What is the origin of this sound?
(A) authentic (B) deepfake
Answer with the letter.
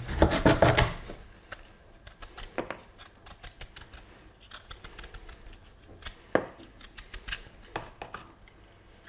A